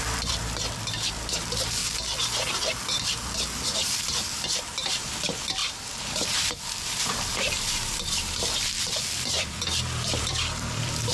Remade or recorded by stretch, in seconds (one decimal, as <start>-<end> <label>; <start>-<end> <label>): 0.0-1.8 remade; 1.8-4.9 recorded; 4.9-11.1 remade